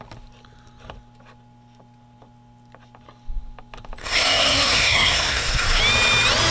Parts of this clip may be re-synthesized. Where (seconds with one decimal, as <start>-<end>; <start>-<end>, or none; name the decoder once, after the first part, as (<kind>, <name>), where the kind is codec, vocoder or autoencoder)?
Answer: 4.0-5.8 (codec, SNAC)